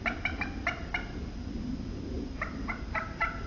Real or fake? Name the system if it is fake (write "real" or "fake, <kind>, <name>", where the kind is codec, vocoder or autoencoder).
real